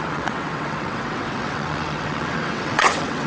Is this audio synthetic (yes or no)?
yes